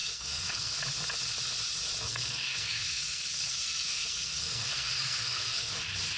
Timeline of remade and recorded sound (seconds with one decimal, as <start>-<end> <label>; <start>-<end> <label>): 0.0-0.8 remade; 0.8-2.1 recorded; 2.1-5.7 remade; 5.7-6.2 recorded